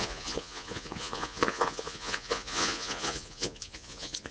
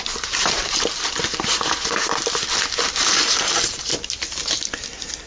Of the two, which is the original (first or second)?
second